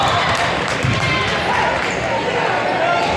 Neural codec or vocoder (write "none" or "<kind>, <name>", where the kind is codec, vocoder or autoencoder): none